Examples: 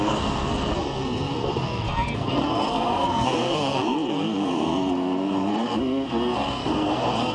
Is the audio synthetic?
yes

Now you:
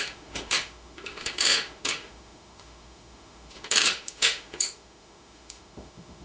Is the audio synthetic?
yes